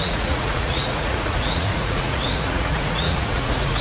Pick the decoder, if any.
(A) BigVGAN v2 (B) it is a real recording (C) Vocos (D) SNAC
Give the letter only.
C